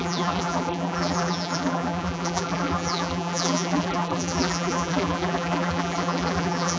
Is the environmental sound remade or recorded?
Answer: remade